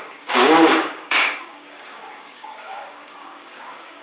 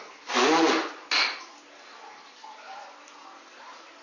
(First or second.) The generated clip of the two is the first